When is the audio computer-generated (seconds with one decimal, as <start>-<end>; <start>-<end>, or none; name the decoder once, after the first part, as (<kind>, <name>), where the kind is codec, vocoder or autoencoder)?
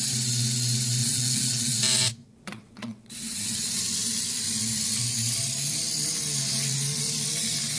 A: 1.0-1.8 (vocoder, WaveNeXt); 2.2-3.8